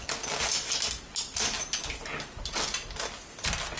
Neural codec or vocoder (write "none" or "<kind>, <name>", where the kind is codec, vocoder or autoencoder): none